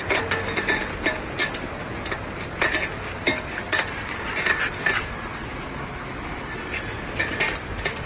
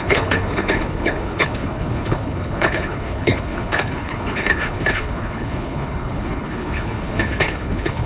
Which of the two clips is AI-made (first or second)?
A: second